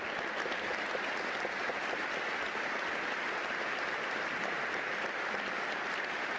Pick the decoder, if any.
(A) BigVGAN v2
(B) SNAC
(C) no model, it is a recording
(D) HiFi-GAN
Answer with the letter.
A